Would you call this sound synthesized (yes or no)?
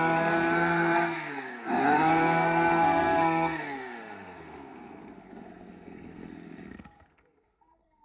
yes